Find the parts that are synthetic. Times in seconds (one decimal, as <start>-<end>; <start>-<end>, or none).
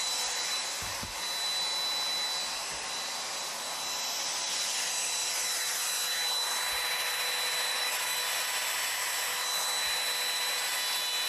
7.7-8.2